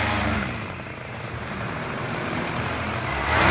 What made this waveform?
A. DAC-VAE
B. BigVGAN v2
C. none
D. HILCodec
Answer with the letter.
B